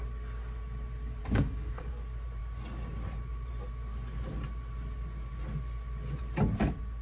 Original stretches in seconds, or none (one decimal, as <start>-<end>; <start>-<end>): 0.0-1.2; 1.9-7.0